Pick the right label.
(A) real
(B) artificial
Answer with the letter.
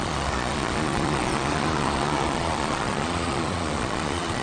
B